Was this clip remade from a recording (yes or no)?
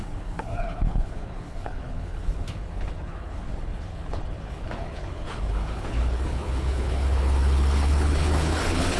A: yes